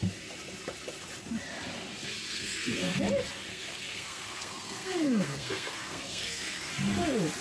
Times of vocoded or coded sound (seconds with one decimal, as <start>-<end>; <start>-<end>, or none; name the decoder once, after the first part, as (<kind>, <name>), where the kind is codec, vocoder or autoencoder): 2.3-3.0 (codec, SNAC); 3.5-6.7